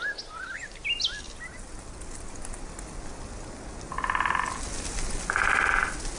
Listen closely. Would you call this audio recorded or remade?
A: recorded